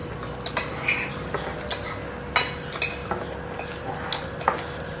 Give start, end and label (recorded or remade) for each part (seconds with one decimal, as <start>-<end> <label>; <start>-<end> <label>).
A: 0.0-5.0 recorded